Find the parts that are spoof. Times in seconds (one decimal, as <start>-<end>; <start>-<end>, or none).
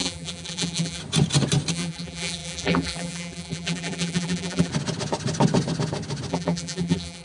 0.0-1.0; 1.7-4.7; 6.3-7.2